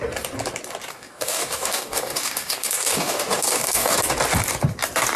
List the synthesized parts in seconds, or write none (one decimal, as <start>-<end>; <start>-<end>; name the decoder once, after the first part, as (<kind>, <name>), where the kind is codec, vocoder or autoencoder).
0.9-4.0 (codec, DAC)